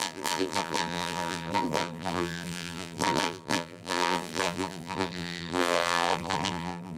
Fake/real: fake